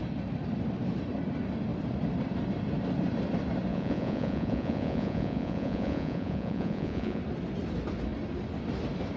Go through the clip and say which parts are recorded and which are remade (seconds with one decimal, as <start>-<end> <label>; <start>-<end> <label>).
0.0-3.7 recorded; 3.7-7.2 remade; 7.2-9.2 recorded